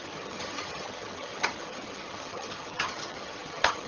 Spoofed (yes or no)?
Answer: yes